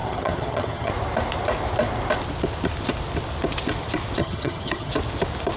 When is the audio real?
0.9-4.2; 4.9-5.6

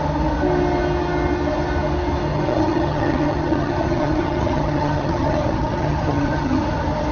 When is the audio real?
0.0-2.3; 6.6-7.1